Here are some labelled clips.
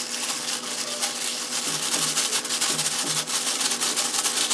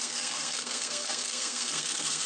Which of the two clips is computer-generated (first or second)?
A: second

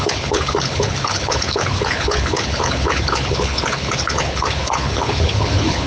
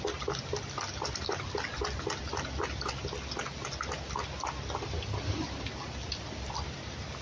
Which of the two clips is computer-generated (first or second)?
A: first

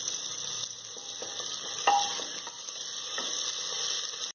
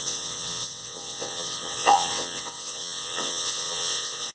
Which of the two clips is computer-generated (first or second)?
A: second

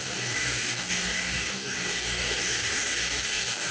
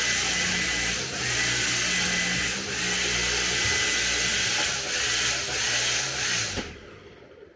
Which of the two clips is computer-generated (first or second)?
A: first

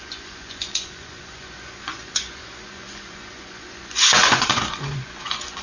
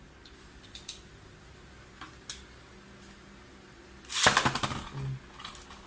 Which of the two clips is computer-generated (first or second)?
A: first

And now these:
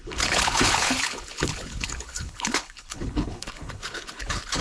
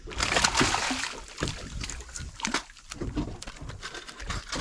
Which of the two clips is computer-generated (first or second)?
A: first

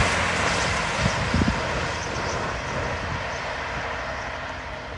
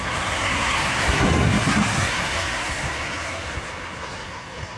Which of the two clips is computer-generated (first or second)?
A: second